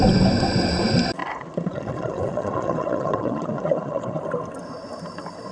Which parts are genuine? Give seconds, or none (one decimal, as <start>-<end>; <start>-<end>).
0.0-1.2; 4.2-5.5